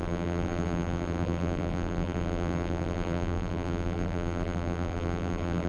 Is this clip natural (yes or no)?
no